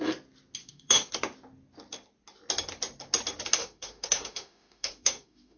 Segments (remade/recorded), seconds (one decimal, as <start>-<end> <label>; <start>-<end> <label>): 0.0-0.6 recorded; 0.6-1.1 remade; 1.1-3.6 recorded; 3.6-5.6 remade